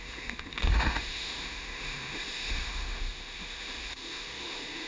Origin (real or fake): fake